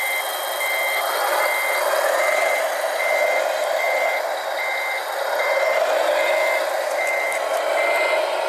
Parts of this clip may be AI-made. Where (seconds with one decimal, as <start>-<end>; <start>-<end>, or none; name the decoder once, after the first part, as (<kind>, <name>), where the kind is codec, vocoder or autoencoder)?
none